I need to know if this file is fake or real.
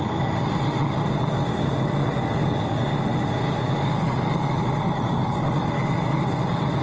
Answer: real